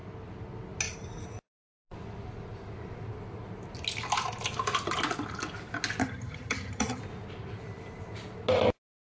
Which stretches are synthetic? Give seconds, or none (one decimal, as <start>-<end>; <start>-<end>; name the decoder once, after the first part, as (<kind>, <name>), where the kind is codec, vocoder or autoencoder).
6.0-7.0 (vocoder, HiFi-GAN)